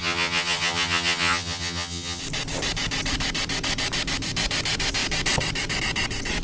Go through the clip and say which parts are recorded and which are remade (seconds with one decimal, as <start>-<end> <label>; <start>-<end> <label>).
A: 0.0-2.2 remade; 2.2-6.4 recorded